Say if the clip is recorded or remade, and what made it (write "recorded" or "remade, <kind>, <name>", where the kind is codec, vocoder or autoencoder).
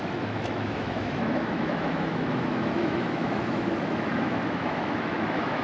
remade, autoencoder, DAC-VAE